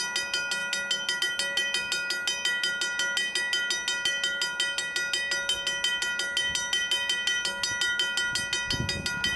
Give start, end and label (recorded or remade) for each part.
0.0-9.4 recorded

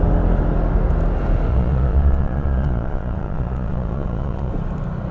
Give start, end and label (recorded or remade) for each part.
0.0-1.5 recorded; 1.5-4.5 remade; 4.5-5.1 recorded

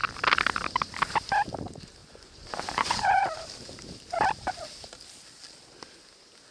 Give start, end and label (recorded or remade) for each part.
0.0-2.0 recorded; 2.0-3.2 remade; 3.2-6.5 recorded

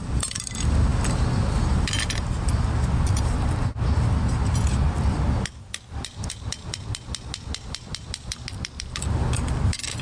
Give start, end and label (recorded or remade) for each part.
0.0-10.0 recorded

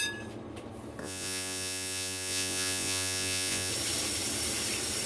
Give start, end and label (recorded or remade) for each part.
0.0-1.0 recorded; 1.0-3.7 remade; 3.7-5.1 recorded

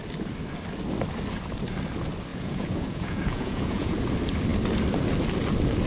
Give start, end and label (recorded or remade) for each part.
0.0-2.3 recorded; 2.3-4.0 remade; 4.0-5.9 recorded

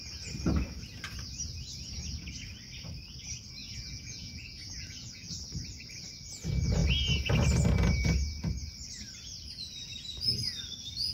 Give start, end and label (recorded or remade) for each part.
0.0-3.6 recorded; 3.6-5.3 remade; 5.3-11.1 recorded

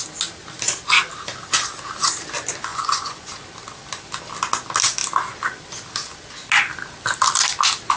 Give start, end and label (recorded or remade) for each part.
0.0-2.7 recorded; 2.7-3.3 remade; 3.3-8.0 recorded